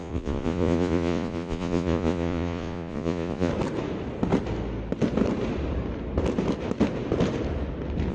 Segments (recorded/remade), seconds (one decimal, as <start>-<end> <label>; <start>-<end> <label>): 0.0-3.5 remade; 3.5-8.1 recorded